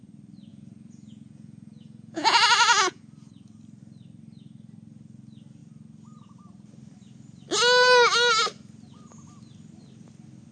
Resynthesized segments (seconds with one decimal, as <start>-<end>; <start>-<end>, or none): 0.5-3.0